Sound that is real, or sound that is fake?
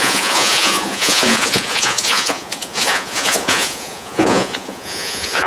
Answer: fake